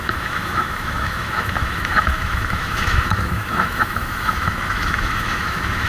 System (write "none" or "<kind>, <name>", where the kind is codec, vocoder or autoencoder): autoencoder, DAC-VAE